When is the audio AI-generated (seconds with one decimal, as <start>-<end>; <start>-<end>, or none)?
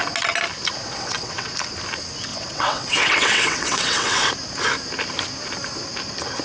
0.8-1.5; 2.3-4.3